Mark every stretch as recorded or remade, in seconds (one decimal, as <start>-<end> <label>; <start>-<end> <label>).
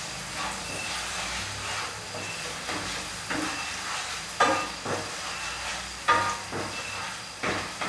0.0-7.9 recorded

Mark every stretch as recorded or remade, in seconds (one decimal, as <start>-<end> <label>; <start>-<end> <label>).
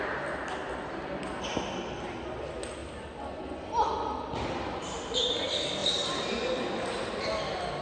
0.0-2.8 recorded; 2.8-4.5 remade; 4.5-7.8 recorded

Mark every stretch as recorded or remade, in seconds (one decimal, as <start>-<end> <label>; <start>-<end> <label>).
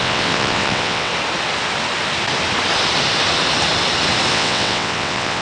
0.0-1.1 remade; 1.1-4.3 recorded; 4.3-5.4 remade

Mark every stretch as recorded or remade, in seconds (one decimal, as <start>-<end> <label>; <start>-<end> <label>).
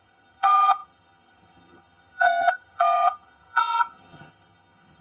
0.0-5.0 remade